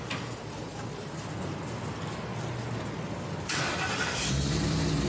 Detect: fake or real real